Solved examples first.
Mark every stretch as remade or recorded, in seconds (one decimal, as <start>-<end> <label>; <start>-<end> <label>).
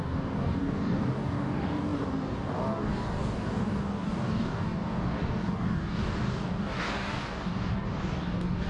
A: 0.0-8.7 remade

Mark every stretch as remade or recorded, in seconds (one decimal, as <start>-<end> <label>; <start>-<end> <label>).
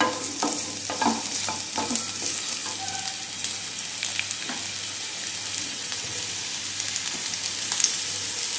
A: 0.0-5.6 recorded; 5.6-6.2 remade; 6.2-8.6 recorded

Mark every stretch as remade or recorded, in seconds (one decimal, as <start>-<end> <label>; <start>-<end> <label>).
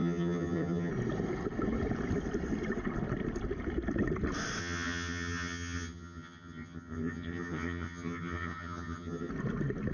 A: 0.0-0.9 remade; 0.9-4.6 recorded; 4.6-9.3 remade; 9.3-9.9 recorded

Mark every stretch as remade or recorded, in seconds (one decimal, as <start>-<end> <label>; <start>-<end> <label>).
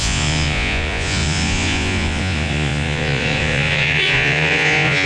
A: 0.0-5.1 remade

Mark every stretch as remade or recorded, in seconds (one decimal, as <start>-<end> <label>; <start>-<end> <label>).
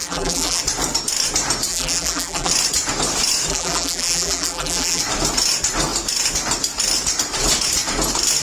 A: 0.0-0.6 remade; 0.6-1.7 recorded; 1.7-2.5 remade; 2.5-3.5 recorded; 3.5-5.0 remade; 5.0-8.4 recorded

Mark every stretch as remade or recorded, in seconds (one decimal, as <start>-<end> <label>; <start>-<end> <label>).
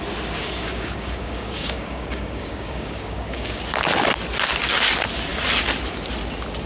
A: 0.0-0.4 recorded; 0.4-3.6 remade; 3.6-6.7 recorded